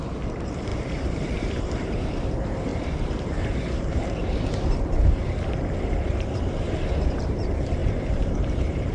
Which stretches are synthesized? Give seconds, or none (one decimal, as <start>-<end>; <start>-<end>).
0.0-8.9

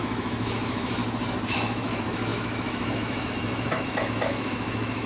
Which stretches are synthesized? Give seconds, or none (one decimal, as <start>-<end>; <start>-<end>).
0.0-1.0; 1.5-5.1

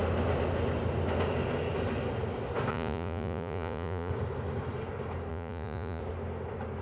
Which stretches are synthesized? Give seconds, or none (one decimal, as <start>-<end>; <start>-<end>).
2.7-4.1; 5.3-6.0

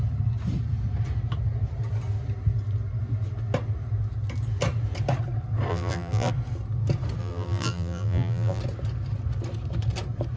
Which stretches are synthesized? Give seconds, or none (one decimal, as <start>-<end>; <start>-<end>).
5.7-6.3; 7.2-8.6

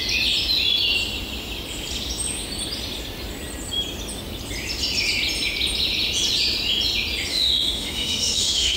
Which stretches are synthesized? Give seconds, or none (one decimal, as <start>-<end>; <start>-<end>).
7.3-8.8

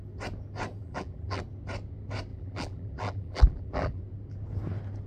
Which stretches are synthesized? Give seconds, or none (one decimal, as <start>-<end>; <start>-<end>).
0.8-1.4; 2.3-4.0

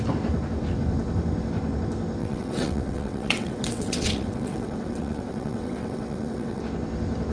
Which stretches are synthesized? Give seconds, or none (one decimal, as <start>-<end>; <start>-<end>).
2.2-6.6